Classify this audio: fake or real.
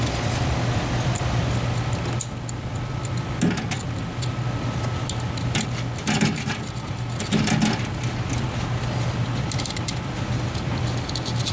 real